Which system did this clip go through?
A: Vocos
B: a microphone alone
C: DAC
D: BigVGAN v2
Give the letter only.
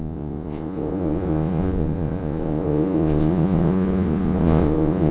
A